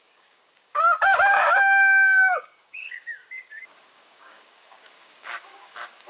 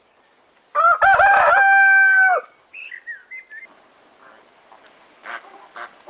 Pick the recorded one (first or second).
second